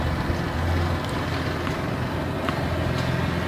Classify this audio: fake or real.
real